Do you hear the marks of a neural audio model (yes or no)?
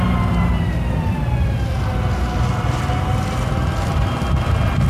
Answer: no